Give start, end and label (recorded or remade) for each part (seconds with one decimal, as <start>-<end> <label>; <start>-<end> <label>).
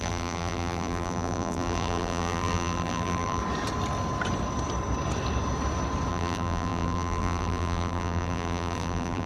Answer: 0.0-3.4 remade; 3.4-6.1 recorded; 6.1-9.3 remade